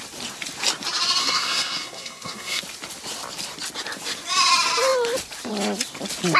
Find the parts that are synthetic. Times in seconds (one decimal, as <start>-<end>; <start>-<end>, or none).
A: 1.2-2.6